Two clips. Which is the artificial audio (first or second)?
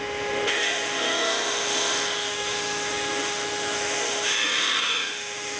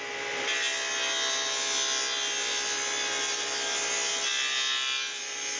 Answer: first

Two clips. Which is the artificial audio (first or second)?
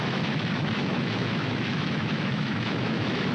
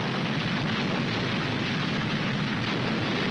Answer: first